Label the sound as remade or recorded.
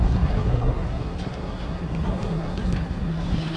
remade